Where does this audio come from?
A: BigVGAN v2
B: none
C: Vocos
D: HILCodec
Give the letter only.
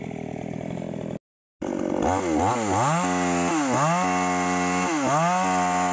B